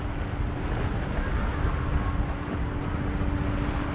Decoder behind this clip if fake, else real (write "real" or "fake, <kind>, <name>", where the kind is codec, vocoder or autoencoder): real